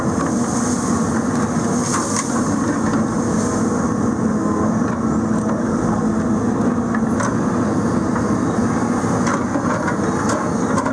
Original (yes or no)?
yes